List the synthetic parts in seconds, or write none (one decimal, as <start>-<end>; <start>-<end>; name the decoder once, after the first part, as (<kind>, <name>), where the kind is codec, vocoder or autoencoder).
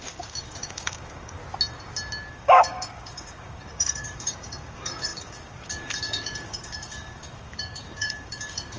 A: 0.0-1.4 (codec, DAC); 2.3-8.8